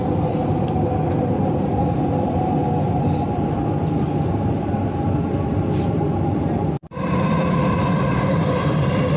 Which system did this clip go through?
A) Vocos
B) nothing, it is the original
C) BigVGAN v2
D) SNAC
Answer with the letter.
C